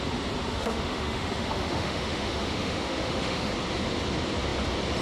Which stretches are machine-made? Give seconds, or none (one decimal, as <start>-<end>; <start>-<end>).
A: 0.5-3.5